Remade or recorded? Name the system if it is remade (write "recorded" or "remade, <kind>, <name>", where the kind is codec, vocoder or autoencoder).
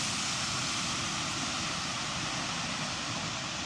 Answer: recorded